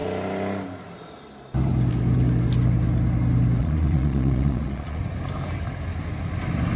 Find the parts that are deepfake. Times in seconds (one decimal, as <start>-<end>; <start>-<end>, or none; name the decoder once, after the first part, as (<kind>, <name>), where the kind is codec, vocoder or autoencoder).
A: 3.6-5.0 (vocoder, Vocos)